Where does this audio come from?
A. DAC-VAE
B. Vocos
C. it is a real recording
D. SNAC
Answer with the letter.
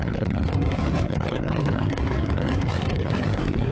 D